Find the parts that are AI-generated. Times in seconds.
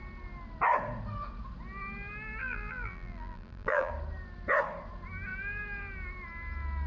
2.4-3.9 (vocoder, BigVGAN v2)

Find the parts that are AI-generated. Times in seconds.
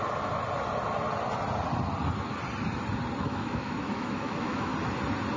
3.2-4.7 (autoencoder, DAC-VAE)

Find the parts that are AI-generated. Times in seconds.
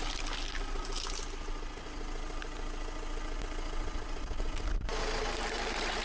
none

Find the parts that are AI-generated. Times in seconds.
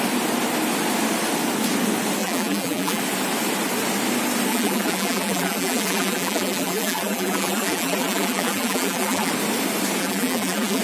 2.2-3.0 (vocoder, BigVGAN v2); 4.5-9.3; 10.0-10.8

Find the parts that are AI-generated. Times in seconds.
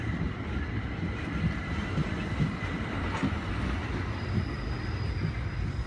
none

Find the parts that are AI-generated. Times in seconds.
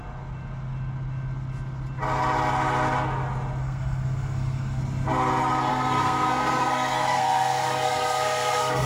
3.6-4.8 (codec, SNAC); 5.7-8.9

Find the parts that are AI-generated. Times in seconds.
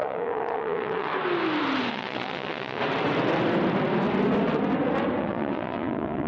0.0-1.1 (vocoder, WaveNeXt); 1.9-2.8; 5.2-6.3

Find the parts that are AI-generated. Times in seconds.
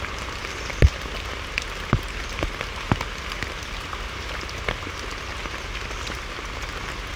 none